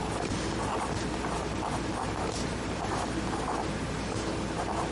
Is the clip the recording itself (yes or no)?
yes